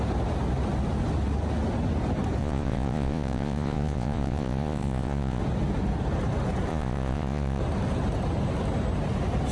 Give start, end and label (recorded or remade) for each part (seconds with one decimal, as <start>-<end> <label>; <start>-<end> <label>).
0.0-2.4 recorded; 2.4-5.4 remade; 5.4-6.7 recorded; 6.7-7.6 remade; 7.6-9.5 recorded